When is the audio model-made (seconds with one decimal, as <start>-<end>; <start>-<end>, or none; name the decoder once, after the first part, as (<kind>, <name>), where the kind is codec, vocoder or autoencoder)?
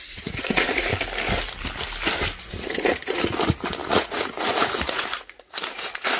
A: 0.0-0.9 (vocoder, Vocos); 2.4-6.2